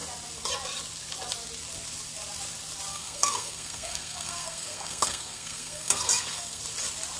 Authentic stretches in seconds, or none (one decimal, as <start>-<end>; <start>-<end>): 0.0-2.9; 6.6-7.2